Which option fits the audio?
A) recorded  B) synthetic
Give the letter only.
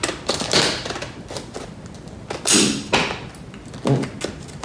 A